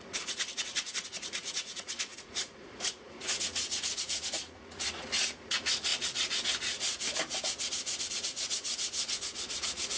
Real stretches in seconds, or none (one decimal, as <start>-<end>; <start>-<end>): 5.9-8.1